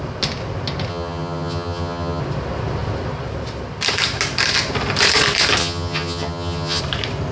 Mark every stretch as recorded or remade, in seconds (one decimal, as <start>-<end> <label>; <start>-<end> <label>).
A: 0.0-0.9 recorded; 0.9-2.2 remade; 2.2-5.6 recorded; 5.6-6.8 remade; 6.8-7.3 recorded